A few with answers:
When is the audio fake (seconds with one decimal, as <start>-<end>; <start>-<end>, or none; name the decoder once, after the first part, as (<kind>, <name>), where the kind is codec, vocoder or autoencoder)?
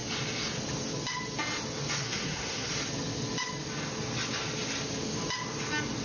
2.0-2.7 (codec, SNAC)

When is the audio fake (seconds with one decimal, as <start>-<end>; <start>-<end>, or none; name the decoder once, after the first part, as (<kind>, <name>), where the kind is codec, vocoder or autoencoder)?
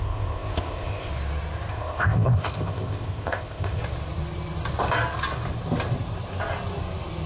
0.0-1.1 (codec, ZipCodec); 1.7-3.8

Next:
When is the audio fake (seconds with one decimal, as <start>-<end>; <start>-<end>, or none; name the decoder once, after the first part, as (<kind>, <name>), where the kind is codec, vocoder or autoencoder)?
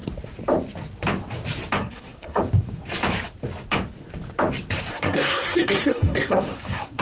1.8-2.4 (codec, SNAC); 4.9-7.0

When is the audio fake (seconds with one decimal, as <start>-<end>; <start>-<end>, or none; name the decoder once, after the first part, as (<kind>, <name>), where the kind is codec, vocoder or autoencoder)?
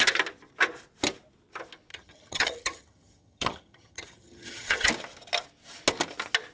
1.9-4.9 (vocoder, HiFi-GAN)